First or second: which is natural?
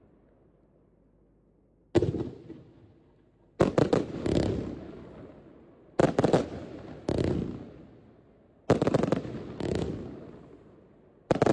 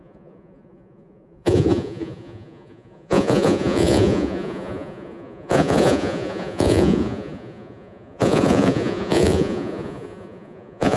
first